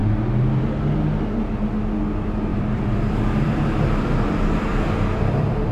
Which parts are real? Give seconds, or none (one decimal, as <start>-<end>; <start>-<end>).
0.0-2.5; 4.0-4.7